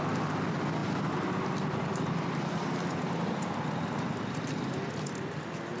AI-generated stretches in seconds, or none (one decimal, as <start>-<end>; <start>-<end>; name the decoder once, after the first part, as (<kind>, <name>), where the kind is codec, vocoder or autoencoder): none